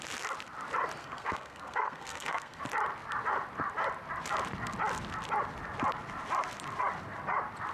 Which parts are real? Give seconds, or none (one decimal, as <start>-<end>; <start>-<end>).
0.0-1.0; 2.6-7.7